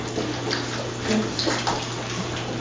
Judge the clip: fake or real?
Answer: real